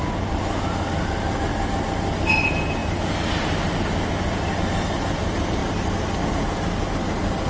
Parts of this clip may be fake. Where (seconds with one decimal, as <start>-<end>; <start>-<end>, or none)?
none